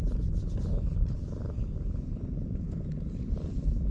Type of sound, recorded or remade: recorded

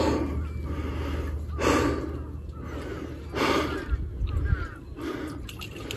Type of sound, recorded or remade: recorded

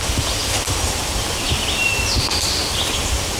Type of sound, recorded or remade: recorded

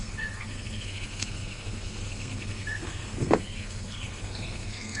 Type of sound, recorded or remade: remade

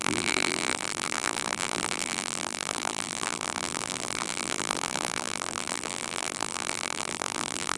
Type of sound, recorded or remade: remade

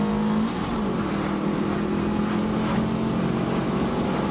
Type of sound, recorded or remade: recorded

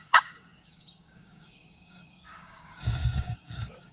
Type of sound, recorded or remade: remade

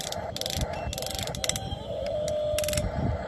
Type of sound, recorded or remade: recorded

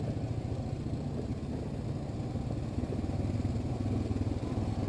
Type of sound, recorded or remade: recorded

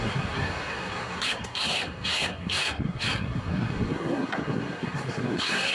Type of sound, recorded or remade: remade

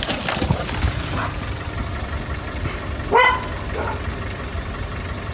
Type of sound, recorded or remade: recorded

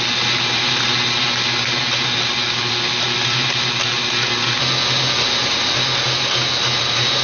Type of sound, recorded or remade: recorded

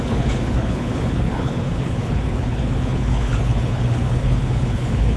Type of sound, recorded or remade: remade